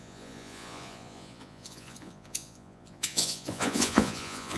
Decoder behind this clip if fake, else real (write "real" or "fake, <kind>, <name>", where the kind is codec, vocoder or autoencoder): fake, vocoder, Vocos